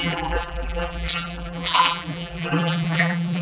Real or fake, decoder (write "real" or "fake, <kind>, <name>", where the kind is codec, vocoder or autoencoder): fake, vocoder, BigVGAN v2